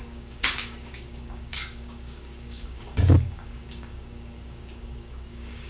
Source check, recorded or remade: remade